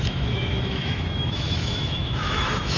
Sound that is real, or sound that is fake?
fake